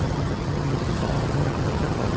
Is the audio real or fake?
fake